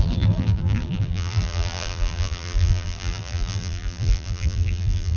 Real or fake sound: fake